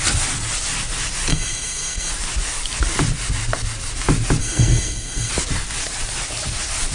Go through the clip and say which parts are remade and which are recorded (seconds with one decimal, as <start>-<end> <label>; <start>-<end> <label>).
0.0-1.3 recorded; 1.3-2.1 remade; 2.1-4.4 recorded; 4.4-5.3 remade; 5.3-6.9 recorded